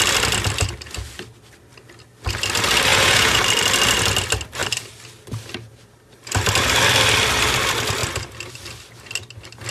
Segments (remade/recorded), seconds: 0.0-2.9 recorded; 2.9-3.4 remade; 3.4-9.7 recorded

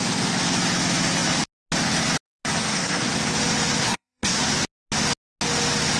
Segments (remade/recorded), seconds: 0.0-2.6 recorded; 2.6-3.1 remade; 3.1-3.8 recorded; 3.8-4.4 remade; 4.4-6.0 recorded

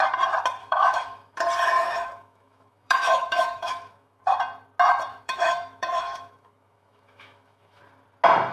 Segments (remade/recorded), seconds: 0.0-0.6 recorded; 0.6-1.4 remade; 1.4-1.8 recorded; 1.8-4.2 remade; 4.2-5.1 recorded; 5.1-7.8 remade; 7.8-8.5 recorded

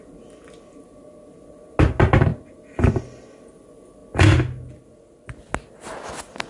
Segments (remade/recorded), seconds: 0.0-6.5 recorded

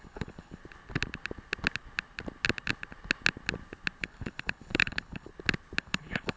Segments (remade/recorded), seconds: 0.0-0.6 remade; 0.6-4.0 recorded; 4.0-5.3 remade; 5.3-5.8 recorded; 5.8-6.4 remade